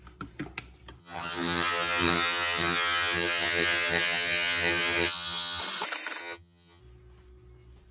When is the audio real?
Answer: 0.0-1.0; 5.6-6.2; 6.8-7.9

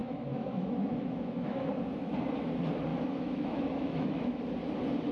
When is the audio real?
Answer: 1.7-2.9; 4.4-5.1

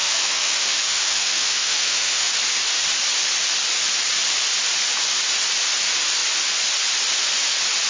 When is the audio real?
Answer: 2.3-7.9

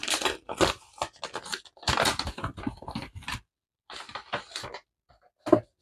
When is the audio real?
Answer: 0.0-5.8